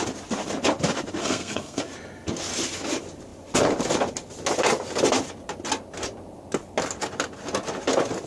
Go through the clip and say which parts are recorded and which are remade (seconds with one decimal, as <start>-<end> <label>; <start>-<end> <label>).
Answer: 0.0-1.2 recorded; 1.2-1.8 remade; 1.8-8.3 recorded